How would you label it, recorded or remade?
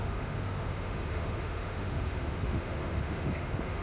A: remade